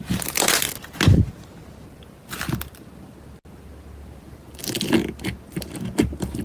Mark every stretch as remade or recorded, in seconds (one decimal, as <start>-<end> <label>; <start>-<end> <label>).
0.0-1.6 recorded; 1.6-2.5 remade; 2.5-6.4 recorded